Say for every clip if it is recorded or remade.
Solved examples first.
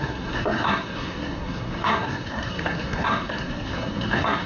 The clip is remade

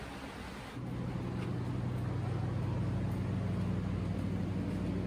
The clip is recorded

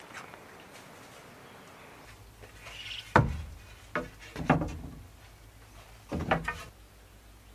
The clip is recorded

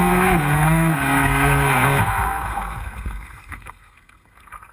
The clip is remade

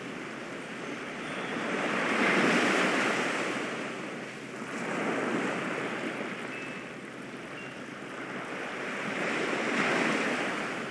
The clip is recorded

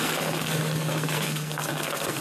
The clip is remade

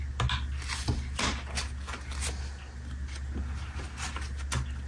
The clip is recorded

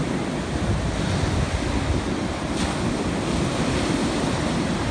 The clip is recorded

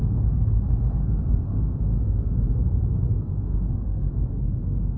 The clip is remade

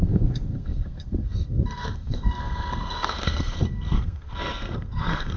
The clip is remade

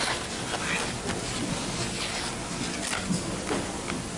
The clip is recorded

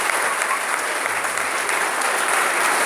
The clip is recorded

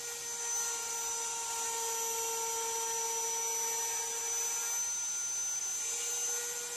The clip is recorded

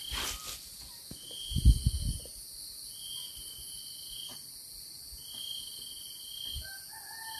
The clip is recorded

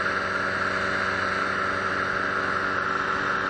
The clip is recorded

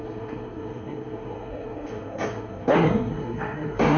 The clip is remade